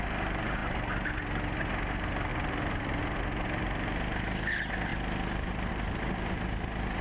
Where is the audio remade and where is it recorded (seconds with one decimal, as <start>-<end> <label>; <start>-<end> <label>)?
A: 0.0-2.3 recorded; 2.3-3.2 remade; 3.2-7.0 recorded